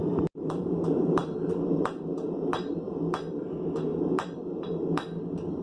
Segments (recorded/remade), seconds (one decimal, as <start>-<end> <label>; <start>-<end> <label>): 0.0-5.6 remade